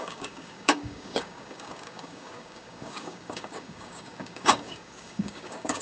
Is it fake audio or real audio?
fake